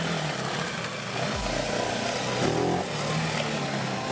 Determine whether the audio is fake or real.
real